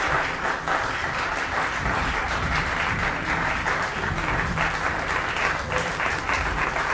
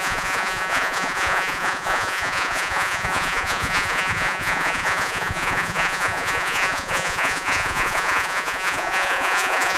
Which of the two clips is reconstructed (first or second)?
second